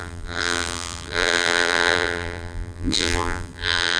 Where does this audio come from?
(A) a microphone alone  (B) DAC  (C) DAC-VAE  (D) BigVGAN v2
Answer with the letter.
D